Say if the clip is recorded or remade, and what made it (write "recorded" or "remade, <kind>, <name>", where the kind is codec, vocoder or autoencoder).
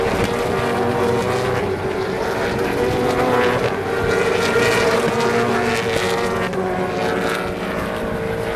recorded